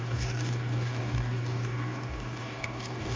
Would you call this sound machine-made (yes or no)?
yes